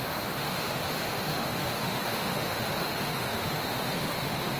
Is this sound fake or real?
fake